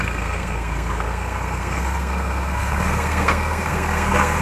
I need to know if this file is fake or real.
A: fake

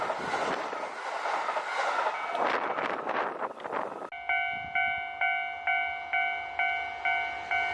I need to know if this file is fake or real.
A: real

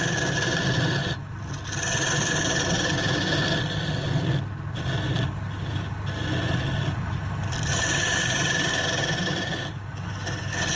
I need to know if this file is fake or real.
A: real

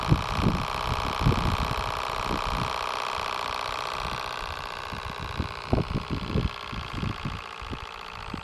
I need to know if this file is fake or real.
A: real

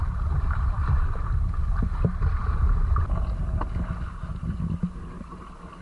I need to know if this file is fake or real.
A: real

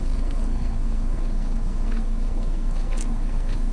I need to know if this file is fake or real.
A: fake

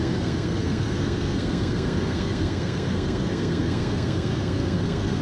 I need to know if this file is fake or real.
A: fake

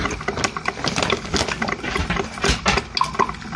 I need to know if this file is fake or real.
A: real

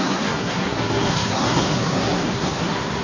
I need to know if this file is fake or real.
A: fake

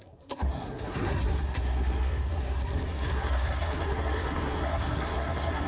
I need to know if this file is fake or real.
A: fake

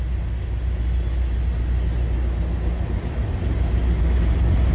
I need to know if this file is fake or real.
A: real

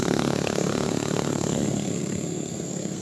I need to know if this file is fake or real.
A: fake